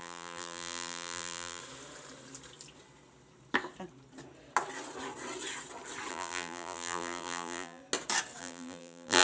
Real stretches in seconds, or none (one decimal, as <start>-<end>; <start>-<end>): 1.6-6.1; 7.8-8.4